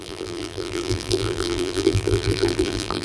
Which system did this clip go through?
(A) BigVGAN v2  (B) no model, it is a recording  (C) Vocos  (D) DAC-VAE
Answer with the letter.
A